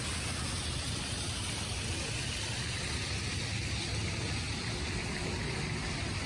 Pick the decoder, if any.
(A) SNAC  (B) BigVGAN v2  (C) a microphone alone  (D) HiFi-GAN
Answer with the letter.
C